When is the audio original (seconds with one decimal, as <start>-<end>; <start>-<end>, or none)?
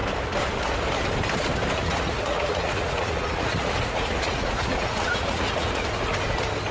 0.0-1.8; 5.8-6.7